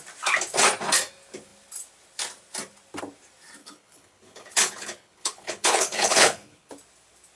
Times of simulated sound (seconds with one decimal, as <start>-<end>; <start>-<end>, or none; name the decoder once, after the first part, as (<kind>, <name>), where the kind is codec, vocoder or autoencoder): 3.6-6.7 (codec, HILCodec)